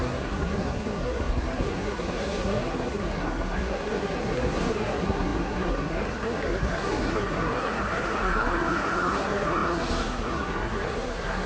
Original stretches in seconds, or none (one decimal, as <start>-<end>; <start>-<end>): none